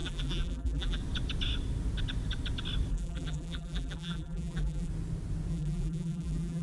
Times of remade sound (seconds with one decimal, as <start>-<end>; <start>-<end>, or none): 0.0-1.0; 2.9-4.9; 5.5-6.6

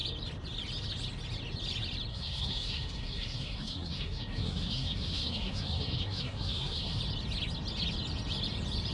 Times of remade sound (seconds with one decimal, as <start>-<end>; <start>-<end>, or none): 2.1-7.0

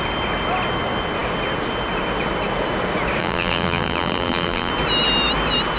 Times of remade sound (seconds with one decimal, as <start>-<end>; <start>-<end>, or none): 3.2-4.7

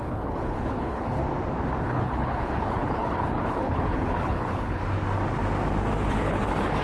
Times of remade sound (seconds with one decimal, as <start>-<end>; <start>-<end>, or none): 0.0-1.2; 1.8-4.8; 6.1-6.8